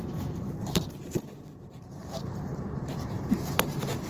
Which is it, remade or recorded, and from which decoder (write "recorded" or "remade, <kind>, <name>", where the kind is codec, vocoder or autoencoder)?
remade, vocoder, BigVGAN v2